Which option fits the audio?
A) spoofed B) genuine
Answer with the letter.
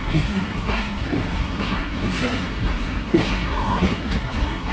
A